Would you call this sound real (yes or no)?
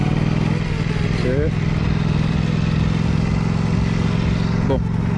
yes